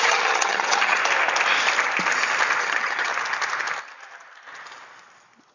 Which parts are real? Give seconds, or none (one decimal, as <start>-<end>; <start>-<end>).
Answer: 1.0-2.6; 3.1-5.5